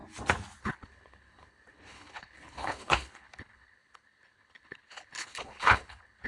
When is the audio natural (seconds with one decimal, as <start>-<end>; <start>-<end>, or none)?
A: 0.0-0.6